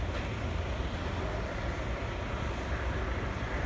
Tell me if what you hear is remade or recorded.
recorded